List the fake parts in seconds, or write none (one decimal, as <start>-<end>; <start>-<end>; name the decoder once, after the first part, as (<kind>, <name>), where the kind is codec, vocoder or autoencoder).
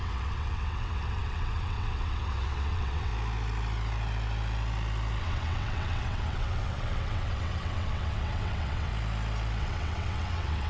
0.0-3.1 (vocoder, WaveNeXt); 5.2-8.9; 9.6-10.7